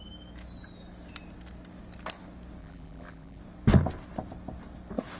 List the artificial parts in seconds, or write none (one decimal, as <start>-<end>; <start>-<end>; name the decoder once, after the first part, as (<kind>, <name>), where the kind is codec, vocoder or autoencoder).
2.6-3.4 (vocoder, BigVGAN v2)

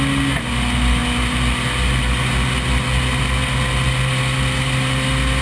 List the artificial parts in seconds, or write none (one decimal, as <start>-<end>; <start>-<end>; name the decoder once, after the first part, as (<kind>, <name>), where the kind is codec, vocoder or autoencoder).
none

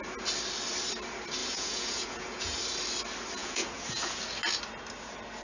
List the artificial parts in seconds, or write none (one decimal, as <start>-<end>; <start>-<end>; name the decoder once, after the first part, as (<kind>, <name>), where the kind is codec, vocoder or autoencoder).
1.4-2.6 (vocoder, Vocos); 3.4-4.2

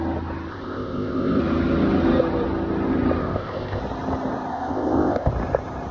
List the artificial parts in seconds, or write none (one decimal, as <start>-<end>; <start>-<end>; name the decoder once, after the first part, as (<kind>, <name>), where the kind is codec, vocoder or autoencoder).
0.5-1.4 (codec, ZipCodec); 3.2-3.8; 4.5-5.3